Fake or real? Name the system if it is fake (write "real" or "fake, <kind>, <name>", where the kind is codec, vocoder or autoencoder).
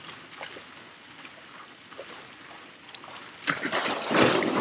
real